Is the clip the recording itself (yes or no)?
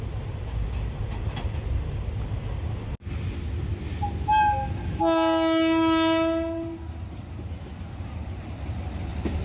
yes